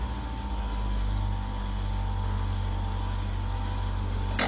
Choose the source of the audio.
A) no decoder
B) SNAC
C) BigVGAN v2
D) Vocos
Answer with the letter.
A